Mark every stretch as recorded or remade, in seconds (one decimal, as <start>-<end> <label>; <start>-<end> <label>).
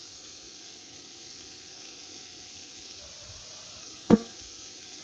0.0-3.0 remade; 3.0-3.8 recorded; 3.8-5.0 remade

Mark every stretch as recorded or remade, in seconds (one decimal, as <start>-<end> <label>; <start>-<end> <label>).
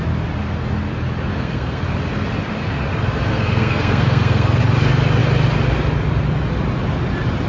0.0-1.3 recorded; 1.3-1.8 remade; 1.8-3.3 recorded; 3.3-4.6 remade; 4.6-7.5 recorded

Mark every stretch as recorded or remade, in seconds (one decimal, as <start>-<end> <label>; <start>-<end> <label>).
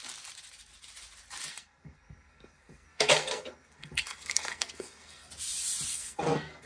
0.0-1.5 recorded; 1.5-5.3 remade; 5.3-5.9 recorded; 5.9-6.7 remade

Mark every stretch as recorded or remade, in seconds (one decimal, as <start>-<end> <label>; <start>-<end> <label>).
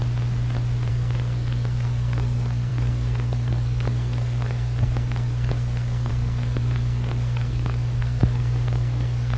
0.0-0.9 recorded; 0.9-9.4 remade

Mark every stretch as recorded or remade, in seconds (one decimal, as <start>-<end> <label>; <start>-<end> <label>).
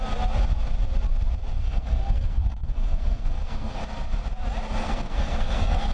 0.0-1.6 recorded; 1.6-3.8 remade; 3.8-4.8 recorded; 4.8-5.9 remade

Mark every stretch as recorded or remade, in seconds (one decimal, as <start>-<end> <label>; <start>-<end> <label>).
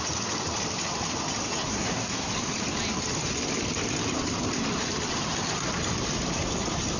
0.0-1.7 recorded; 1.7-2.3 remade; 2.3-7.0 recorded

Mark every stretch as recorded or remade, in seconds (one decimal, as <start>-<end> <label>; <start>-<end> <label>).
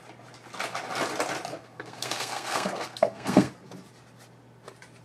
0.0-1.5 recorded; 1.5-3.5 remade; 3.5-5.0 recorded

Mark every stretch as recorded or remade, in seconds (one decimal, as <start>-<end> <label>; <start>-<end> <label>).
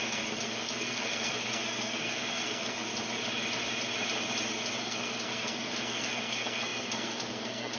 0.0-2.9 remade; 2.9-4.8 recorded; 4.8-7.8 remade